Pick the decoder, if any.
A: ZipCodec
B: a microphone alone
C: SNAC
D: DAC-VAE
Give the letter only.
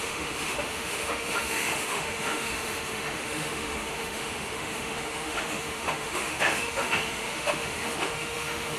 D